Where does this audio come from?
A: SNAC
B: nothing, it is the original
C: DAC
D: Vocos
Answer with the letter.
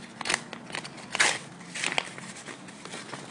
B